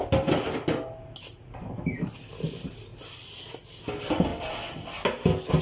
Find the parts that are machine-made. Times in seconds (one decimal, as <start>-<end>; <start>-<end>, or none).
none